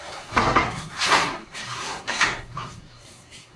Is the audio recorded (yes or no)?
no